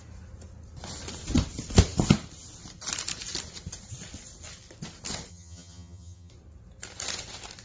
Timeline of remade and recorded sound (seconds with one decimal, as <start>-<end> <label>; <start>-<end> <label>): 0.0-5.3 recorded; 5.3-6.3 remade; 6.3-7.6 recorded